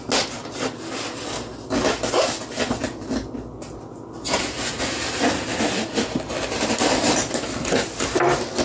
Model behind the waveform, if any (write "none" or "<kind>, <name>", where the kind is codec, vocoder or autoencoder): none